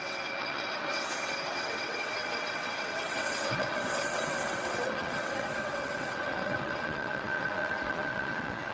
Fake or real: fake